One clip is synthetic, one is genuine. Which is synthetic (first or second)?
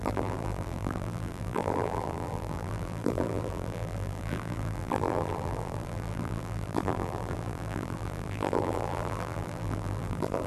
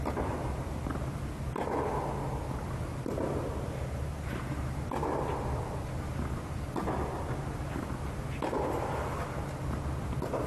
first